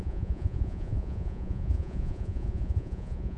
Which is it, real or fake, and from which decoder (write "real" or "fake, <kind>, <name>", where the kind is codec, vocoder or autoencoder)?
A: fake, vocoder, Vocos